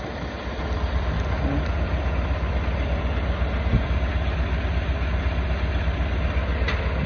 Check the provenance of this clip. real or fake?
real